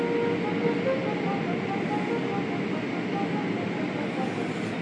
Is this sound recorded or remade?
recorded